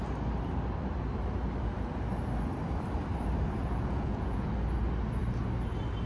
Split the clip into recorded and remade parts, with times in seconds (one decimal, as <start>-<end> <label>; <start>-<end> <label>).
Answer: 0.0-3.6 recorded; 3.6-4.5 remade; 4.5-6.1 recorded